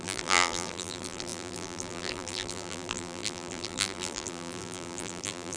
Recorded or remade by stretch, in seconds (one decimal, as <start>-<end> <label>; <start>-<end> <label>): 0.0-5.6 remade